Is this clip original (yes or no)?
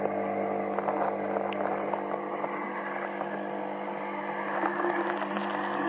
yes